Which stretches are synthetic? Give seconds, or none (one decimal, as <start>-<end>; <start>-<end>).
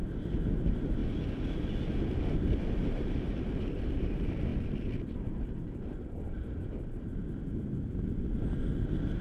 none